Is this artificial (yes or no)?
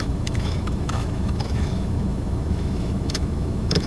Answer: yes